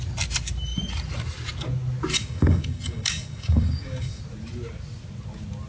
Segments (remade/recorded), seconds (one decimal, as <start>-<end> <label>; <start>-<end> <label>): 0.0-2.1 recorded; 2.1-4.2 remade; 4.2-5.7 recorded